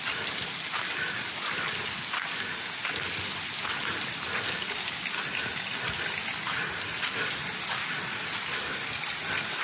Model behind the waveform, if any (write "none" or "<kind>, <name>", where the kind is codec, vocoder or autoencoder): none